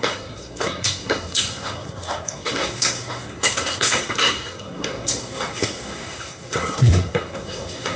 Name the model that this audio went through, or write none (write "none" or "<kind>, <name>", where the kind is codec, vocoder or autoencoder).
codec, SNAC